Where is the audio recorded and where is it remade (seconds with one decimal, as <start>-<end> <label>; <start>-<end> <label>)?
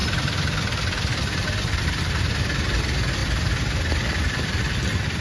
0.0-3.2 recorded; 3.2-4.6 remade; 4.6-5.2 recorded